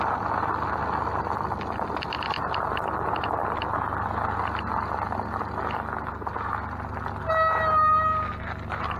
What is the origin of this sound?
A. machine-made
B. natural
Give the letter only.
B